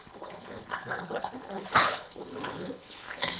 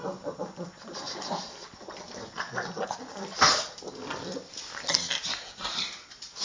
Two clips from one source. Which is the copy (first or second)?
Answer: first